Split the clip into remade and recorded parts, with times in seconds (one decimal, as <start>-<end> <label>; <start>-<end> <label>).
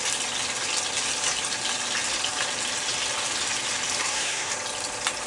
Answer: 0.0-4.0 recorded; 4.0-4.5 remade; 4.5-5.3 recorded